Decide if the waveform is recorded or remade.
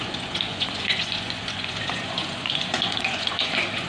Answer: remade